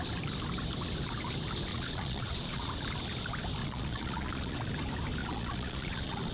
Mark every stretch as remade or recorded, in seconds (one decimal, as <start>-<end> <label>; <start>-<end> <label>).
0.0-1.7 recorded; 1.7-2.7 remade; 2.7-3.6 recorded; 3.6-4.7 remade; 4.7-5.2 recorded; 5.2-6.3 remade